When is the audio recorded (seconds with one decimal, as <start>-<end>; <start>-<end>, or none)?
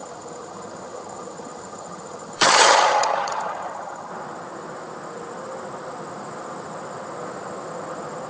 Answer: 4.1-8.3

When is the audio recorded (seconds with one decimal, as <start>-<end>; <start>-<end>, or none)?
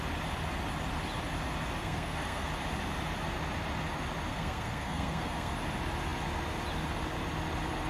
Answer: 0.0-1.8; 2.5-4.3; 5.5-7.9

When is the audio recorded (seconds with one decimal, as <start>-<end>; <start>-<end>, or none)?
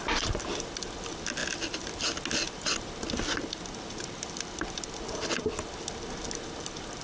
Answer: 0.0-7.0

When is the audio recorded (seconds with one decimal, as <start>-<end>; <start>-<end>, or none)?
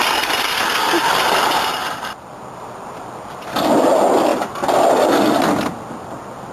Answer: 0.0-6.5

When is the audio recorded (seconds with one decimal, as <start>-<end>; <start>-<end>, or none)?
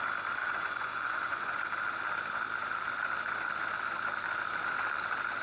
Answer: 0.0-0.4; 1.6-5.4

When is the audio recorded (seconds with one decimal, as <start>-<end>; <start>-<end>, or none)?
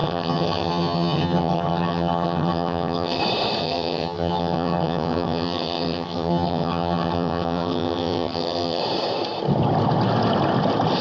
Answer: 3.2-3.6; 8.8-11.0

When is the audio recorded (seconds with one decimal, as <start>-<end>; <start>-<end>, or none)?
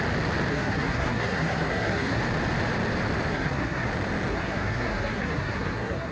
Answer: 0.0-0.5; 2.2-3.3; 3.9-4.3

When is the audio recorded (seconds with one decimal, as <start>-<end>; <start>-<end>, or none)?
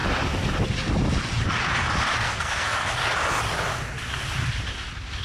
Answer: 0.0-2.2; 2.9-5.2